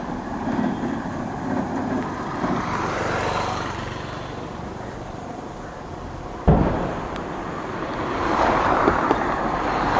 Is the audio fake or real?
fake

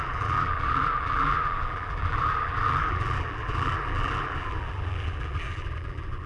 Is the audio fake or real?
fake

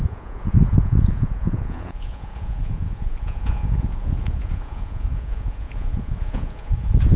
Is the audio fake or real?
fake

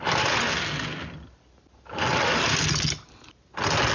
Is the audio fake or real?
real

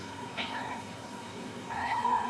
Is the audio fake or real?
fake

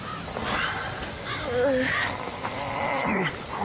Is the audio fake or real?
real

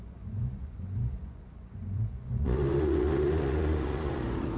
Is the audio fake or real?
fake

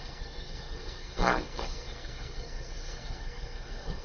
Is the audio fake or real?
fake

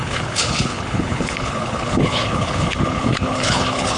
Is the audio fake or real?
fake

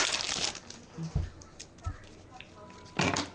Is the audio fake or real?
real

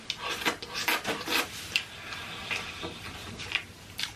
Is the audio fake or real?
real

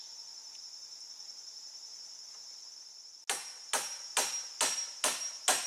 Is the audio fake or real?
real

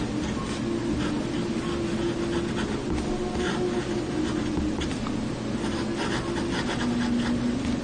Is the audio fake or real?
real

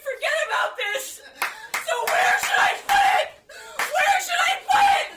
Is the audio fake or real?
fake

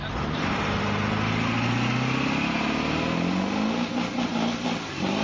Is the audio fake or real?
real